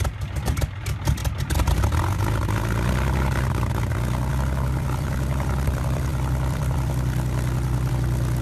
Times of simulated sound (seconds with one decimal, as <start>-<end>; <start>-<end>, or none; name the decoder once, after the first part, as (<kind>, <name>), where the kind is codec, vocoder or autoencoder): 0.0-1.2 (vocoder, BigVGAN v2); 4.3-8.4